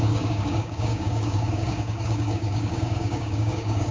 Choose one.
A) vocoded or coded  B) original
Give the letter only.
A